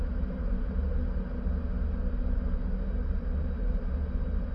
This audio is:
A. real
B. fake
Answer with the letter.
A